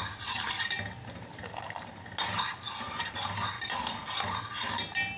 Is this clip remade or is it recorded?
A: recorded